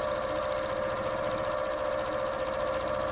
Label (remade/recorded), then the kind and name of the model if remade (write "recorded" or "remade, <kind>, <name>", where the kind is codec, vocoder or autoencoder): recorded